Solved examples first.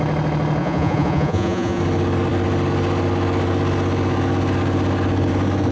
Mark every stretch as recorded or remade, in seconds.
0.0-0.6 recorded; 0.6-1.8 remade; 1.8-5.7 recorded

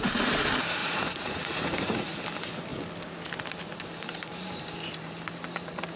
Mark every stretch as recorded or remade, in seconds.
0.0-0.8 recorded; 0.8-2.2 remade; 2.2-6.0 recorded

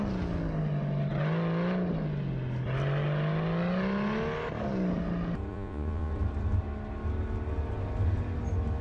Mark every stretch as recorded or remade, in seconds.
0.0-5.5 recorded; 5.5-6.1 remade; 6.1-8.8 recorded

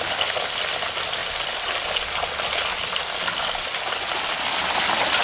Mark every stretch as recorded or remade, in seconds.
0.0-5.2 recorded